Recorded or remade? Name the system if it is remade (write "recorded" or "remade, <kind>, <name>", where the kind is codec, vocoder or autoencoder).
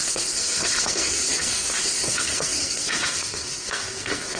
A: remade, codec, SNAC